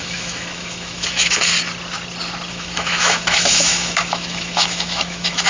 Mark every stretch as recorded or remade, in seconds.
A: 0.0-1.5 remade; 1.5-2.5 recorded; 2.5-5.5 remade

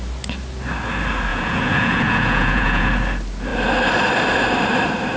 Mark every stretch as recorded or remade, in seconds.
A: 0.0-1.3 recorded; 1.3-2.9 remade; 2.9-5.2 recorded

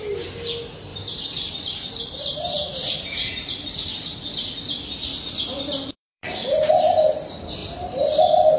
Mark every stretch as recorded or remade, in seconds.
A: 0.0-0.9 recorded; 0.9-3.8 remade; 3.8-5.1 recorded; 5.1-6.7 remade; 6.7-7.6 recorded; 7.6-8.2 remade; 8.2-8.6 recorded

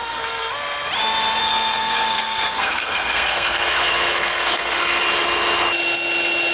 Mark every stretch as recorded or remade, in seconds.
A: 0.0-0.5 remade; 0.5-1.4 recorded; 1.4-5.0 remade; 5.0-6.5 recorded

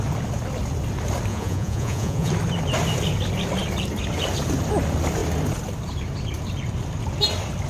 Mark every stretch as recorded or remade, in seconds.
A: 0.0-1.3 recorded; 1.3-2.3 remade; 2.3-7.7 recorded

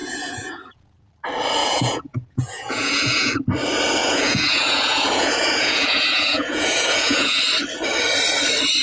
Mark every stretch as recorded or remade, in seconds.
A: 0.0-1.1 remade; 1.1-1.6 recorded; 1.6-3.3 remade; 3.3-4.0 recorded; 4.0-7.4 remade; 7.4-8.8 recorded

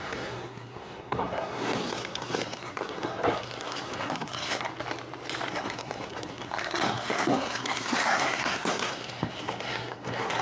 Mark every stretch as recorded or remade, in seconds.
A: 0.0-4.7 remade; 4.7-5.5 recorded; 5.5-10.4 remade